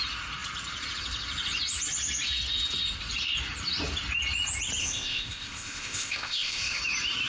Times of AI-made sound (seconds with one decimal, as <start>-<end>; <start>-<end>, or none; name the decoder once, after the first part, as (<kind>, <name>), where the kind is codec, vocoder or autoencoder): 4.8-6.8 (codec, ZipCodec)

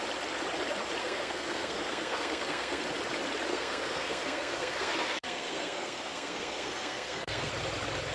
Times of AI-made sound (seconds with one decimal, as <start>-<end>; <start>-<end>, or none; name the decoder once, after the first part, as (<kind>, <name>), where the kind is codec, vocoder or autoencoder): 1.0-2.8 (codec, SNAC); 3.5-7.5